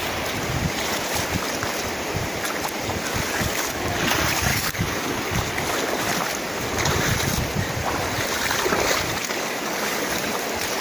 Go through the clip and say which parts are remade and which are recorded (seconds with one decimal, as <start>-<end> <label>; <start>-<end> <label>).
0.0-4.5 recorded; 4.5-5.2 remade; 5.2-9.2 recorded; 9.2-10.1 remade; 10.1-10.8 recorded